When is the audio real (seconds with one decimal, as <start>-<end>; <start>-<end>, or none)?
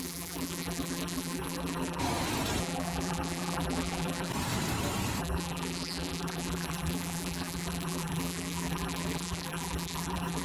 2.0-2.6; 4.3-5.2